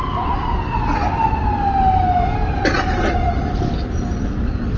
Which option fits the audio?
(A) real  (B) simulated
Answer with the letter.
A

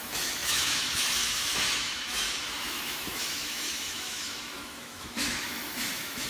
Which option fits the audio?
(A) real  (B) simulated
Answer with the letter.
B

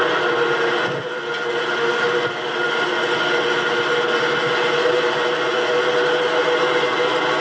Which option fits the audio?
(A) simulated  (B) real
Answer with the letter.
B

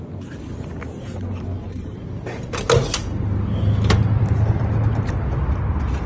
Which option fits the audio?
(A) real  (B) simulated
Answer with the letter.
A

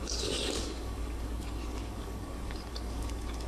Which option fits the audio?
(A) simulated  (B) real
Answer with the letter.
A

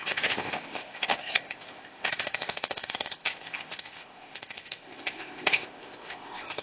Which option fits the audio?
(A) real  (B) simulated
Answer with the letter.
B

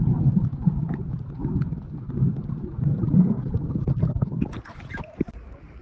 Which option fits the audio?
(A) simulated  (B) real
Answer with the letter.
B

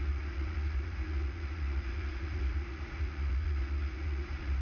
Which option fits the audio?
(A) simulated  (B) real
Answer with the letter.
A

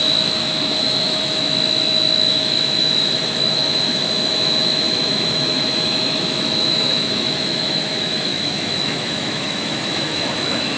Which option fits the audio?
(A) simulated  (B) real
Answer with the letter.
A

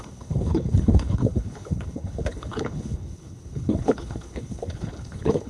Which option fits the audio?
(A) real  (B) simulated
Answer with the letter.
B